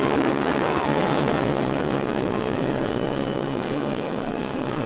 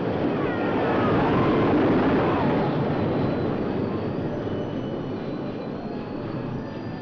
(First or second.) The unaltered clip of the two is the second